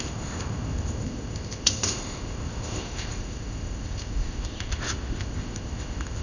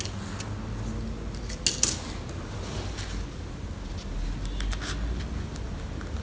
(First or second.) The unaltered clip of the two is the second